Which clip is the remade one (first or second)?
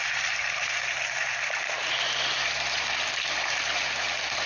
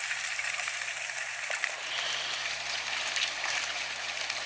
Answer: second